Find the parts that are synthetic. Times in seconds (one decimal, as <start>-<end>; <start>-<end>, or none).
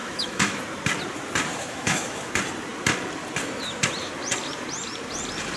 0.0-0.6; 1.5-2.3